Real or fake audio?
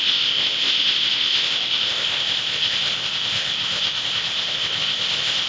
fake